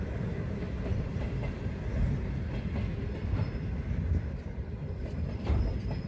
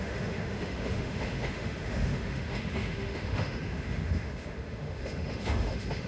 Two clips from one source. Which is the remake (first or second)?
second